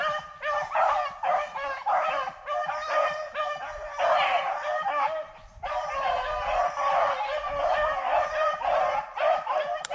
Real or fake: real